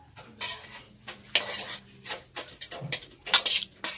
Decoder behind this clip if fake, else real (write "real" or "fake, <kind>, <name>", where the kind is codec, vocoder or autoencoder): real